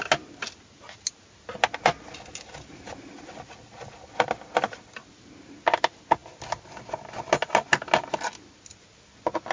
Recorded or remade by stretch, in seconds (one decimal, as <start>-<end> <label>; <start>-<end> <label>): 0.0-9.5 recorded